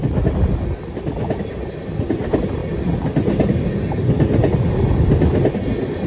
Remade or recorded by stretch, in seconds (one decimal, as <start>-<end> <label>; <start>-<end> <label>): 0.0-6.1 recorded